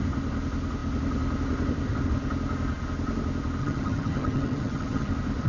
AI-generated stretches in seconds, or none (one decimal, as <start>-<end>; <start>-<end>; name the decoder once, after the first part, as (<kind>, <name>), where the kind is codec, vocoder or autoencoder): 3.6-5.1 (vocoder, HiFi-GAN)